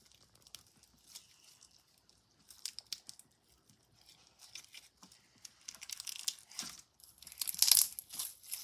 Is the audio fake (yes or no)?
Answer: no